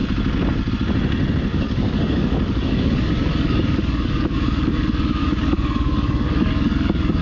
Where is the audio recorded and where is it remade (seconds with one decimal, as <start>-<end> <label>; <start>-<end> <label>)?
0.0-1.5 recorded; 1.5-4.8 remade; 4.8-5.2 recorded; 5.2-7.2 remade